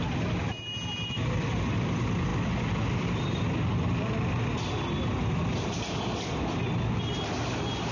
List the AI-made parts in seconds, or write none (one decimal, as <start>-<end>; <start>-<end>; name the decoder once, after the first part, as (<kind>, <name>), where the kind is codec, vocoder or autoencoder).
none